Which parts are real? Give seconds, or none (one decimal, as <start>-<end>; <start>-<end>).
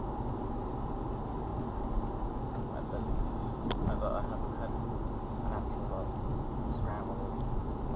0.0-8.0